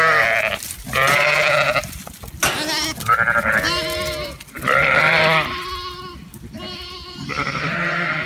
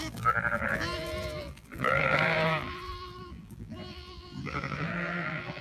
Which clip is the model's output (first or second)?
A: second